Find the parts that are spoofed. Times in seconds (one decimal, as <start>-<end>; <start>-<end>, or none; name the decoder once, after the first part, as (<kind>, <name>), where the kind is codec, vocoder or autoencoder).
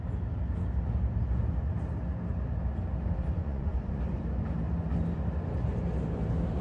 3.4-4.0 (vocoder, Vocos)